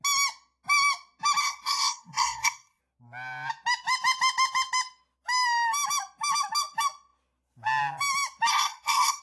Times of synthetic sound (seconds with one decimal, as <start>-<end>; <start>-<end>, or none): 1.4-2.8; 8.5-9.2